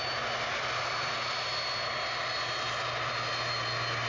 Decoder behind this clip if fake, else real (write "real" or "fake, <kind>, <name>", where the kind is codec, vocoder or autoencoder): real